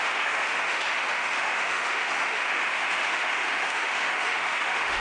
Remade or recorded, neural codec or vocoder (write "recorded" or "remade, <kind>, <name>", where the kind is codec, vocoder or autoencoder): remade, autoencoder, DAC-VAE